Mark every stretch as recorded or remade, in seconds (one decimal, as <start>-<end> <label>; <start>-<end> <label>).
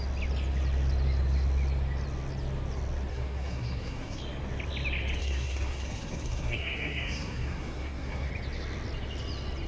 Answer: 0.0-3.1 recorded; 3.1-4.2 remade; 4.2-5.2 recorded; 5.2-8.3 remade; 8.3-9.7 recorded